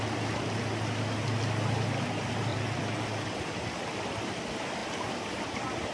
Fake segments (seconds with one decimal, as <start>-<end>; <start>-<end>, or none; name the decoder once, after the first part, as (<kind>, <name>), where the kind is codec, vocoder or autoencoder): 2.5-3.7 (vocoder, BigVGAN v2); 4.8-5.4